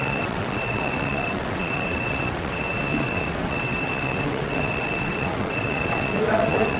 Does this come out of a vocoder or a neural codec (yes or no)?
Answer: yes